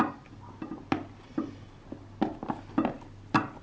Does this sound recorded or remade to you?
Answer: recorded